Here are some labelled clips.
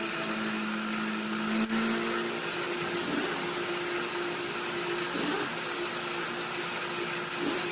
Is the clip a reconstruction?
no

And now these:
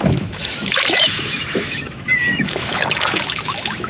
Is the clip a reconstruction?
yes